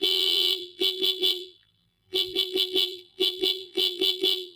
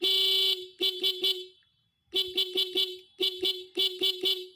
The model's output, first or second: first